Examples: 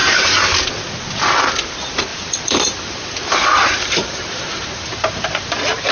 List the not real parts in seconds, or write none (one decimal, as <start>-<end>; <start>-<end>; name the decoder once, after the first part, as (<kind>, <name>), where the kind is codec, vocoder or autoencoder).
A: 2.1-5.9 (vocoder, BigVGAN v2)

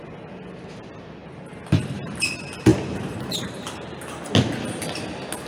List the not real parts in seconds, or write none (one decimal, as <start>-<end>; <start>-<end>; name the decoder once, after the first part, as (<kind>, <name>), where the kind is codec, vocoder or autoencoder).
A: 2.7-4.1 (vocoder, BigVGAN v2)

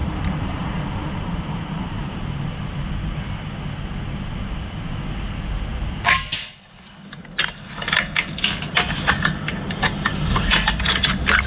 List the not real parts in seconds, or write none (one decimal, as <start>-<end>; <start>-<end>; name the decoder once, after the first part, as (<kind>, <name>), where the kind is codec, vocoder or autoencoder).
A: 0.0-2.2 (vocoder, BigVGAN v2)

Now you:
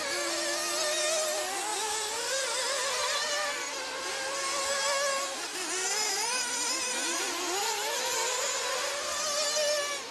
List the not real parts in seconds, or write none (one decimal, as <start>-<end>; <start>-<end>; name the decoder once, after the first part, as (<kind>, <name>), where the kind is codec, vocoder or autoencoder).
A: 1.7-4.0 (vocoder, BigVGAN v2); 5.5-6.4

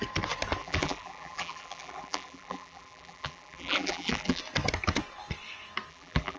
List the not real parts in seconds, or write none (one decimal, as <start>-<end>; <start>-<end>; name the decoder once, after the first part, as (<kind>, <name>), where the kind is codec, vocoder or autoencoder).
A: 0.6-4.4 (vocoder, BigVGAN v2); 5.9-6.4

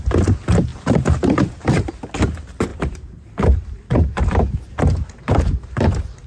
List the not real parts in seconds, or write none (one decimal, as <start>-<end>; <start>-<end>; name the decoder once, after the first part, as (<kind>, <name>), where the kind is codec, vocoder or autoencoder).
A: 0.7-1.9 (vocoder, BigVGAN v2); 2.7-6.3